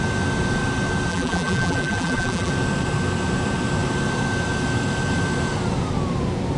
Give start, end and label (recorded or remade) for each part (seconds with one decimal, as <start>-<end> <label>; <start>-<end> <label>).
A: 0.0-1.1 recorded; 1.1-2.5 remade; 2.5-6.6 recorded